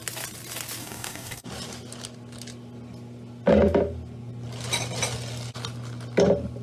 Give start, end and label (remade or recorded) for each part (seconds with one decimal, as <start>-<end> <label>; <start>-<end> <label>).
0.0-0.8 recorded; 0.8-1.5 remade; 1.5-6.6 recorded